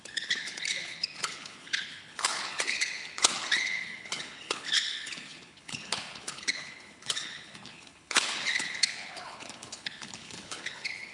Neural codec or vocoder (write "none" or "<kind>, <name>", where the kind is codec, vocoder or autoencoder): codec, HILCodec